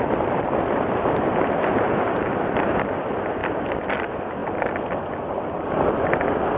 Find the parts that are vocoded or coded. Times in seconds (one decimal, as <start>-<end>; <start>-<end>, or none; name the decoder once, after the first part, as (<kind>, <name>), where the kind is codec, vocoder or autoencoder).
0.0-3.4 (vocoder, BigVGAN v2); 3.9-4.4; 5.4-6.6